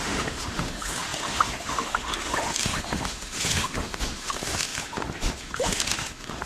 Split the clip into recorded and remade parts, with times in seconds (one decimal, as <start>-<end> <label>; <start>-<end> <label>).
0.0-6.5 remade